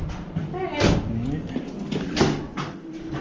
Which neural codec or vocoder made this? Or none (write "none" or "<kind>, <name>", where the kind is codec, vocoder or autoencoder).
none